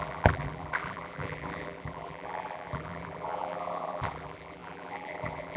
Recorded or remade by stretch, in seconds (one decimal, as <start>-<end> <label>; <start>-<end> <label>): 0.0-5.6 remade